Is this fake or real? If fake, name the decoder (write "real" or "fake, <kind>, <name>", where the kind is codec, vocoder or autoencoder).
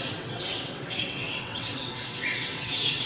fake, vocoder, WaveNeXt